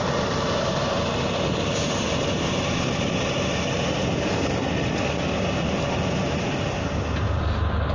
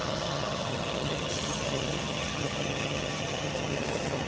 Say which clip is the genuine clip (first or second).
first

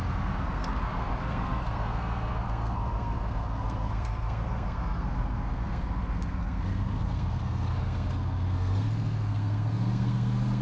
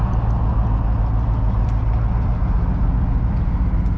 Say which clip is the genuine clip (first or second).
second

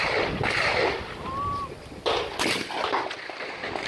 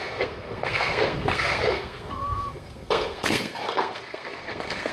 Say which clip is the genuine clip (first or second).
first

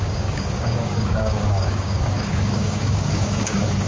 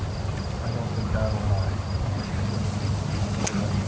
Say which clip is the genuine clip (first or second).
second